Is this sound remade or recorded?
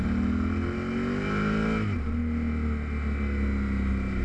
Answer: recorded